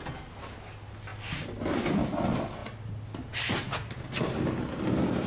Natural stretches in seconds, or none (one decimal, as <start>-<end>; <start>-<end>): 0.0-5.3